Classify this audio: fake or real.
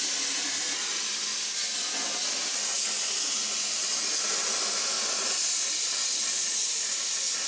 real